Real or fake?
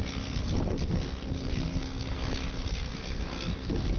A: fake